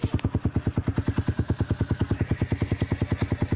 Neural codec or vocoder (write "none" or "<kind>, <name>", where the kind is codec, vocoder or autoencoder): none